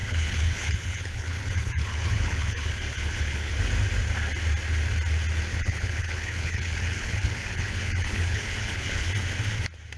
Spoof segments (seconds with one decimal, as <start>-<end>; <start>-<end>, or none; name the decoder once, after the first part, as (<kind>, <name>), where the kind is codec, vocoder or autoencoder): 0.0-3.5 (codec, HILCodec); 5.5-9.1